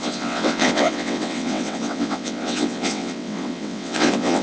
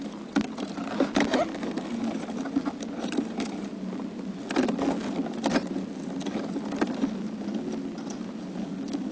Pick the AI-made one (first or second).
first